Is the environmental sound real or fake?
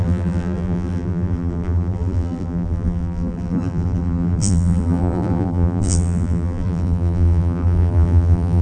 fake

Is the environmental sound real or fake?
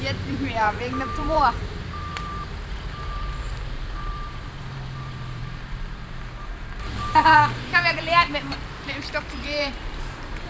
fake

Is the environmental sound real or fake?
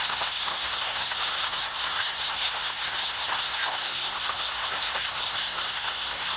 fake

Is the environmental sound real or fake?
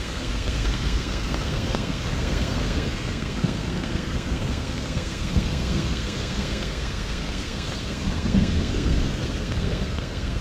fake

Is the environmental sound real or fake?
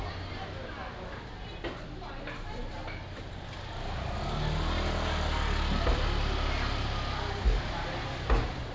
real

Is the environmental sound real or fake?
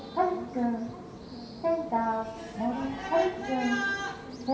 real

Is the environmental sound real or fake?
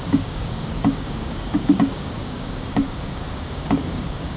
fake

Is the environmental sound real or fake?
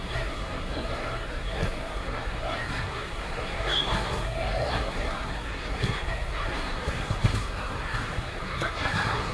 fake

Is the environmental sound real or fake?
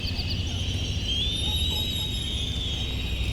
real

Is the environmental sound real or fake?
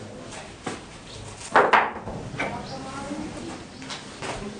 real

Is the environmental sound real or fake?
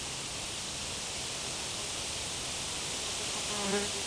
real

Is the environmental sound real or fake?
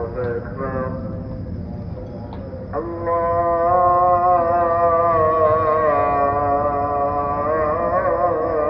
real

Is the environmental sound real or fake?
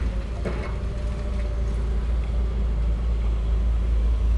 real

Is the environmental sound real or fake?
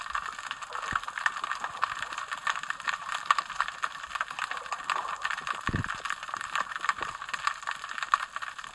real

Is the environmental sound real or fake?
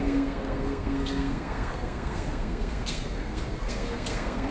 fake